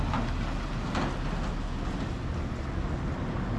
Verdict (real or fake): real